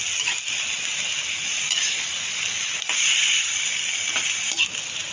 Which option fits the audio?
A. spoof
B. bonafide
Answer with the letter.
B